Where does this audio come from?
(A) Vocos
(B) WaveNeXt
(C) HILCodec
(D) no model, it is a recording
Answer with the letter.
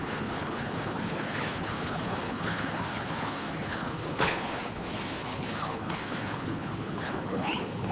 C